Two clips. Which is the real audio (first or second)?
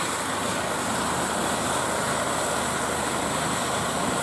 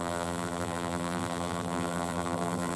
first